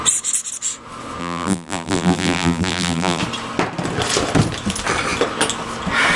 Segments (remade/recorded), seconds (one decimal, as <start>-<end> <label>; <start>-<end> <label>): 0.0-1.2 recorded; 1.2-3.2 remade; 3.2-6.2 recorded

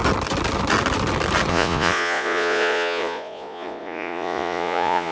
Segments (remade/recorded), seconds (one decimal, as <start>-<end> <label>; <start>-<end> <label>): 0.0-1.5 recorded; 1.5-5.1 remade

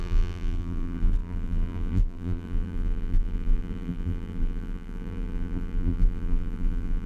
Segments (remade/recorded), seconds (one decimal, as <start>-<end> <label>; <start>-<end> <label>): 0.0-7.1 remade

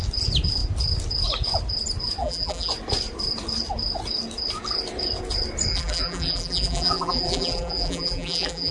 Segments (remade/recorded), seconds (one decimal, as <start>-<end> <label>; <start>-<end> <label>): 0.0-2.2 recorded; 2.2-2.7 remade; 2.7-5.7 recorded; 5.7-8.7 remade

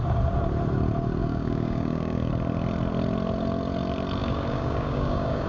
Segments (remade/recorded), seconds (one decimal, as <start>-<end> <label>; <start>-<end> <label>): 0.0-1.2 recorded; 1.2-2.3 remade; 2.3-4.2 recorded; 4.2-5.5 remade

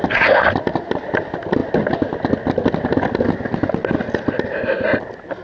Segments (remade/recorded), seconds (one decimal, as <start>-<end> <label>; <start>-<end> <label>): 0.0-5.4 recorded